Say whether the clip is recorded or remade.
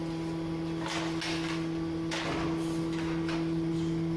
recorded